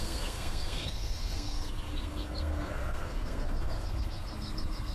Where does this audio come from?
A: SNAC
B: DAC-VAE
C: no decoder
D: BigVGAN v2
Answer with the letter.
A